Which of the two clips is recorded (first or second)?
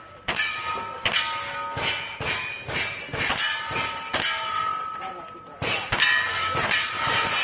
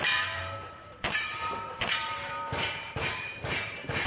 first